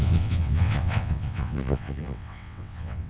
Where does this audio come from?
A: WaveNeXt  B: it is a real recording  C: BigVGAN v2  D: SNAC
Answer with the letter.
A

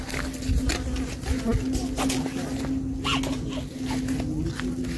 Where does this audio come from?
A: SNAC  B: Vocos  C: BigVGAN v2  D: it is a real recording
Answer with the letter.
D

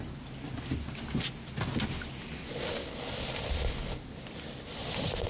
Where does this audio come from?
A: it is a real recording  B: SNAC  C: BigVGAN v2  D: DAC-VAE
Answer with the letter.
A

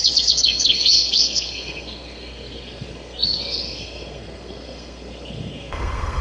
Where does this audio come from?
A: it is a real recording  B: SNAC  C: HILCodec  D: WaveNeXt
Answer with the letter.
B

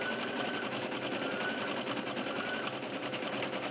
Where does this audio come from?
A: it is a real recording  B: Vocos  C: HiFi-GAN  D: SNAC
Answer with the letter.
A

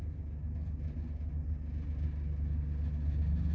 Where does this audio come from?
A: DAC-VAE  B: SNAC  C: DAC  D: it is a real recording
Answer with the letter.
D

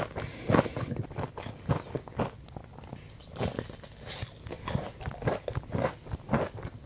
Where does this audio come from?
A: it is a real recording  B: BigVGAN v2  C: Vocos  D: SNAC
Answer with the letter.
A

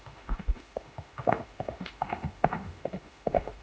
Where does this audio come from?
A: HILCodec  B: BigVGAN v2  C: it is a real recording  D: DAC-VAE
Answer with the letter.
D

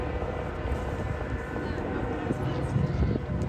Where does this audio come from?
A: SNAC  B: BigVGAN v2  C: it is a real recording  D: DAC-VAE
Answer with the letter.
C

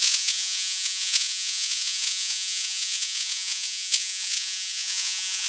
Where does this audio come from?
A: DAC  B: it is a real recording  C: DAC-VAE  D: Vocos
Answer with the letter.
D